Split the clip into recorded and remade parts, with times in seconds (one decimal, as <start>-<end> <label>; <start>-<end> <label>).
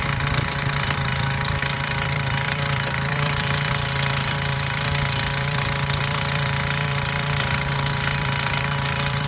0.0-9.3 remade